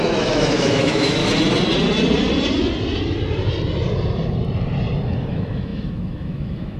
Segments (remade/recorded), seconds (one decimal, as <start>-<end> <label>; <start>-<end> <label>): 0.0-1.2 remade; 1.2-5.3 recorded; 5.3-6.8 remade